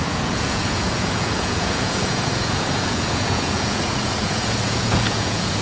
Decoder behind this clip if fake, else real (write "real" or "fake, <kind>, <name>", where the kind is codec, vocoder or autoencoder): fake, vocoder, Vocos